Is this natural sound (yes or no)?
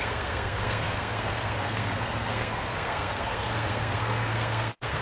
no